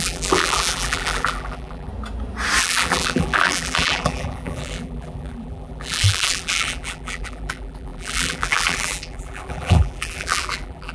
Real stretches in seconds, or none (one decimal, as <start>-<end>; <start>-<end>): 1.9-2.6